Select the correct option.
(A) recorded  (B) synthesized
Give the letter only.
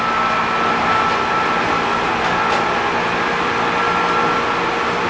A